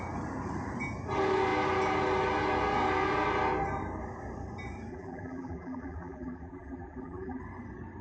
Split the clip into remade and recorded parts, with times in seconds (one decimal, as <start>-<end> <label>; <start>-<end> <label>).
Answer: 0.0-4.9 recorded; 4.9-7.4 remade; 7.4-8.0 recorded